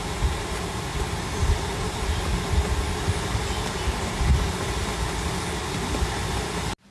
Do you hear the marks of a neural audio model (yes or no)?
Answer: no